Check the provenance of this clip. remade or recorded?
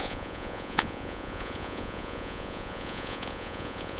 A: remade